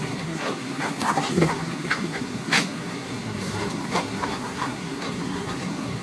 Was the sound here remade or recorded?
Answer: remade